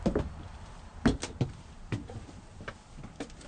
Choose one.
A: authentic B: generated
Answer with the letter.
A